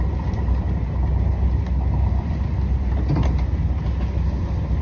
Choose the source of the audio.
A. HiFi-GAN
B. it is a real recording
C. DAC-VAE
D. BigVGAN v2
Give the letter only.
B